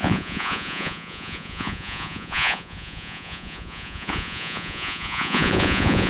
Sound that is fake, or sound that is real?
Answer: fake